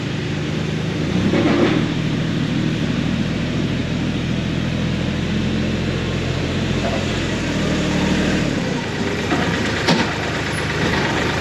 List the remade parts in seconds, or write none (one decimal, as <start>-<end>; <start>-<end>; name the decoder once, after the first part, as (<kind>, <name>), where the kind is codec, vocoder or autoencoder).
0.0-3.8 (vocoder, BigVGAN v2); 6.4-11.4